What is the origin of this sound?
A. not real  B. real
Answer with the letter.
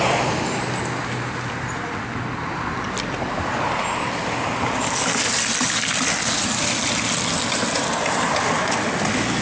B